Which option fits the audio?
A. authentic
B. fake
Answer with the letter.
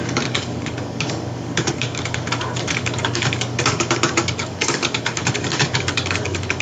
B